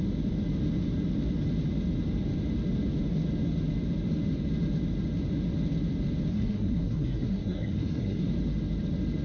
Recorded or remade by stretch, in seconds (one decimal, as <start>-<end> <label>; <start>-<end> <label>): 0.0-6.3 recorded; 6.3-8.3 remade; 8.3-9.2 recorded